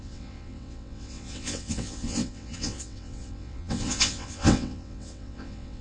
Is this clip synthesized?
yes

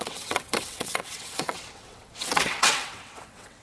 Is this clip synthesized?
yes